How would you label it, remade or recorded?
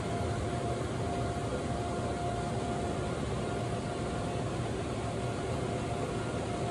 recorded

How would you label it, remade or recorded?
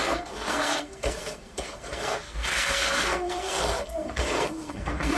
remade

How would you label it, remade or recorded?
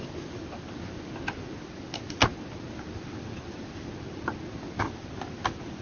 recorded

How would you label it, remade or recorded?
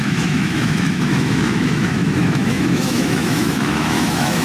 remade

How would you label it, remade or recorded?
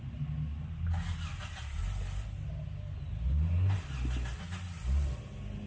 recorded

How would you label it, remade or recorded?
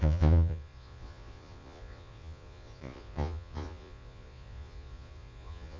remade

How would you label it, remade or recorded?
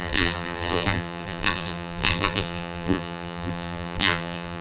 remade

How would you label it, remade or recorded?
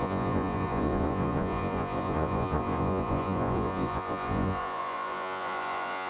remade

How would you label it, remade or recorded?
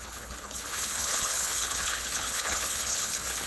remade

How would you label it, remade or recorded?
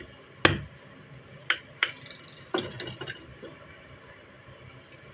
recorded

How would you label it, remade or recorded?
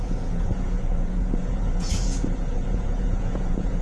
remade